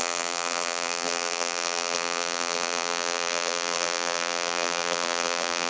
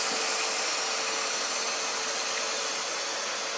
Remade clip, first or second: first